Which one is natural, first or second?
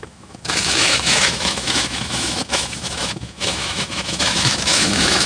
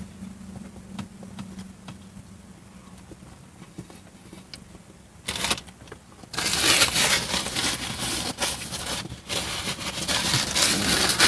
second